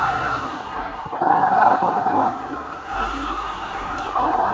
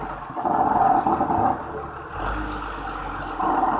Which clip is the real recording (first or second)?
second